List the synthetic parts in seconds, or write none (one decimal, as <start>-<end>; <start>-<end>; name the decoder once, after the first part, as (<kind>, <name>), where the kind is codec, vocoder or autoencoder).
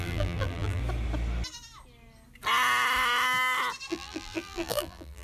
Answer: 0.0-0.8 (vocoder, BigVGAN v2); 3.9-5.2